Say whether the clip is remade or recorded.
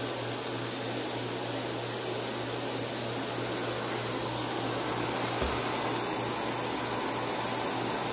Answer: recorded